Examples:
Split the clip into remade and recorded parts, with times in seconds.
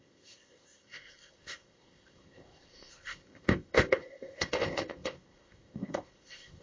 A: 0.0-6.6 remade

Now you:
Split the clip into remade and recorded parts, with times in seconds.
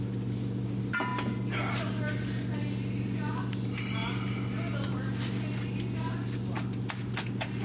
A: 0.0-7.6 recorded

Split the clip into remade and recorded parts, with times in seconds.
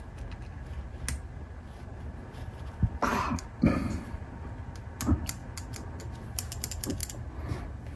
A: 0.0-8.0 recorded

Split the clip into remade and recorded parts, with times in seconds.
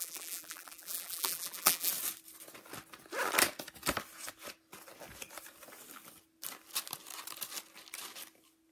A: 0.0-1.9 remade; 1.9-8.7 recorded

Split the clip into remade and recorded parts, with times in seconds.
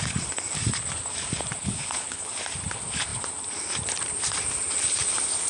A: 0.0-1.6 recorded; 1.6-2.3 remade; 2.3-5.5 recorded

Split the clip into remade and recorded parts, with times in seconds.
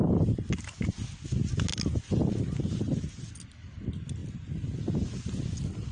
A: 0.0-5.9 recorded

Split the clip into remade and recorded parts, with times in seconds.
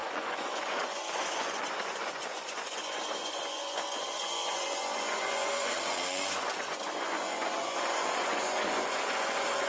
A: 0.0-9.7 remade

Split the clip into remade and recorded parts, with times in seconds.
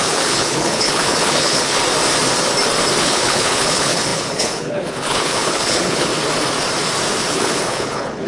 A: 0.0-1.8 remade; 1.8-3.0 recorded; 3.0-6.1 remade; 6.1-7.2 recorded; 7.2-8.3 remade